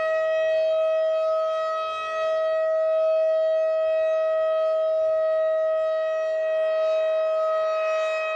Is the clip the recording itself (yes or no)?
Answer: yes